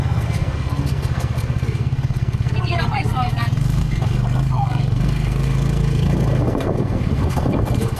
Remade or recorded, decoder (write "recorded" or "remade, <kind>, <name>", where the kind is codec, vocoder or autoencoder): remade, codec, SNAC